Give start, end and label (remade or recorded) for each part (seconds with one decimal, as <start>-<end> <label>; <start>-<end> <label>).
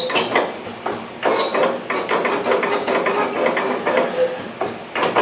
0.0-5.2 recorded